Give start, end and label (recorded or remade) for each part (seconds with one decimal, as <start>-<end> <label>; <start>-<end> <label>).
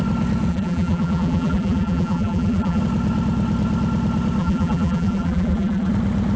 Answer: 0.0-0.5 recorded; 0.5-2.8 remade; 2.8-4.4 recorded; 4.4-5.9 remade; 5.9-6.4 recorded